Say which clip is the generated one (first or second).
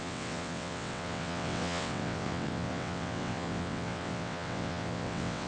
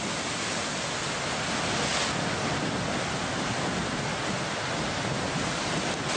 first